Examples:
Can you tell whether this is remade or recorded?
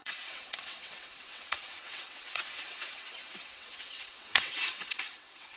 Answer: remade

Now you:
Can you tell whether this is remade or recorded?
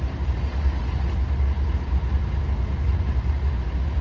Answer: recorded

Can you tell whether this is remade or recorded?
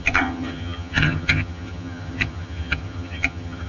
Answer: remade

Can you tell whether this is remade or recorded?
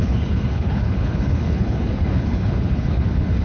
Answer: remade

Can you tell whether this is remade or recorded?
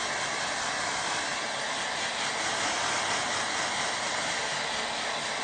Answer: recorded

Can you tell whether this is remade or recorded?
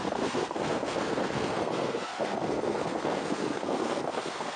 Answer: remade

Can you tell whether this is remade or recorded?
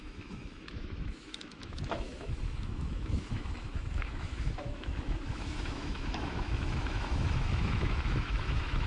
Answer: remade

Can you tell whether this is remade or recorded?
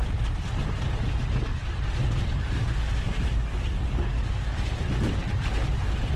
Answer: recorded